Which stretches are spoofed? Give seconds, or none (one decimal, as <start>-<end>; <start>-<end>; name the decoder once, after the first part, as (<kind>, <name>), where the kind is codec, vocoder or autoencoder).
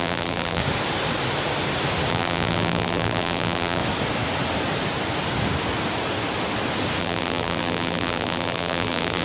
0.0-0.6 (vocoder, BigVGAN v2); 2.1-3.8; 7.0-9.2